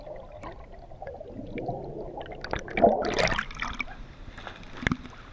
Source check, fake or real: real